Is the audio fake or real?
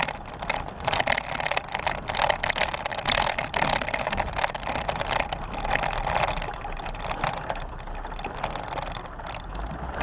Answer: real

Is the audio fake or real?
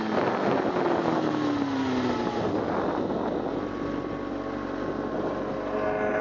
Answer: real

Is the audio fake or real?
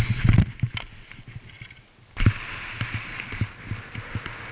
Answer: real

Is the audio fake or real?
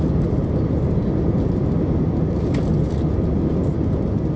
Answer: real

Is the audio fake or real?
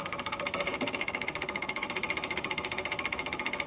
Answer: fake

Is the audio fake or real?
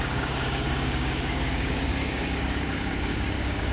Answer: fake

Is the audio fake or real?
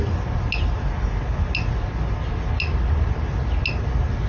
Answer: real